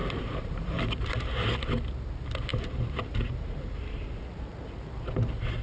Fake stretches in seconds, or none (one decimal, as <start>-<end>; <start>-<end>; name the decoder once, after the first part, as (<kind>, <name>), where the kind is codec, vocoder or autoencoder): 0.0-0.8 (vocoder, BigVGAN v2); 2.5-4.1